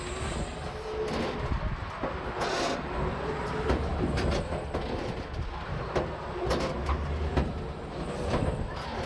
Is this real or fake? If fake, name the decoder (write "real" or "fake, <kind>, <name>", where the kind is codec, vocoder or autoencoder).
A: real